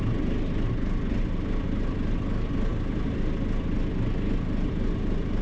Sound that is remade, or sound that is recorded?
recorded